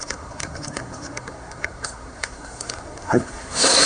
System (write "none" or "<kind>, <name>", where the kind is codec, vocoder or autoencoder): codec, SNAC